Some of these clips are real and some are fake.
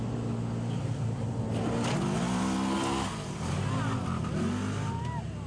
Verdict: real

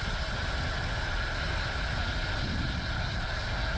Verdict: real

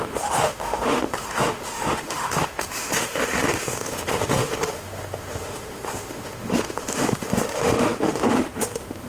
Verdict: fake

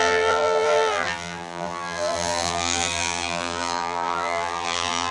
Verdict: fake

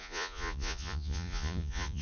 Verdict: fake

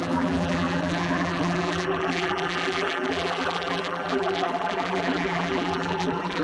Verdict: fake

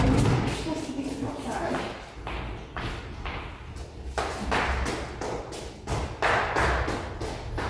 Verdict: real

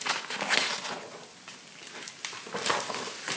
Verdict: real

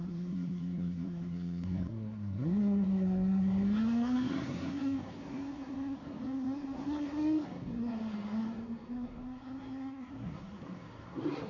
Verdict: fake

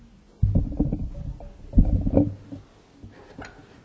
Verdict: real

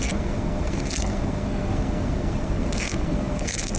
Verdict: fake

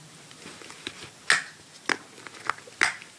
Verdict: real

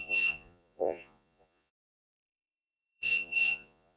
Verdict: fake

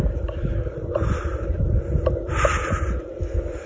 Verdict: real